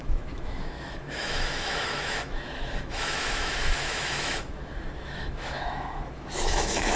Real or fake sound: fake